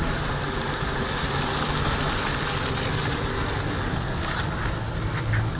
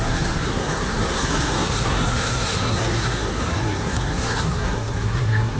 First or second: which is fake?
second